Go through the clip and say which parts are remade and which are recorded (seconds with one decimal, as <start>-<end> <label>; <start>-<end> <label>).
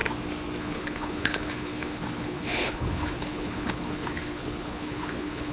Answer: 0.0-0.6 recorded; 0.6-5.5 remade